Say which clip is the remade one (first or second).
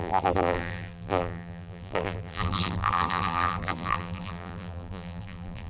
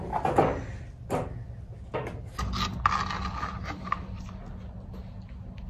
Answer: first